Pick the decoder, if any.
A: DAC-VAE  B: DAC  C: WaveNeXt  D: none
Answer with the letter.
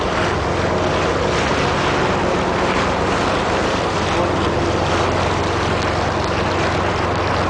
D